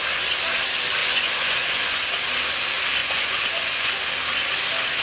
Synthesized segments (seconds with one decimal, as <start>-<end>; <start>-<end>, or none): 1.0-2.1; 3.0-4.0